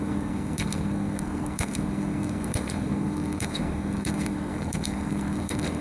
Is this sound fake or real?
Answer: fake